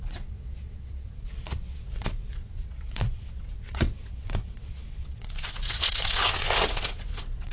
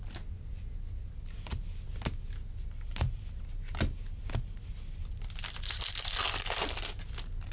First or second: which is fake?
first